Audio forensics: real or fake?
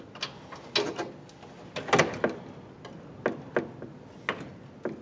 real